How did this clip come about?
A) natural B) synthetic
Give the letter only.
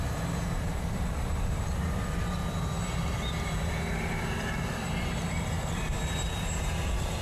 B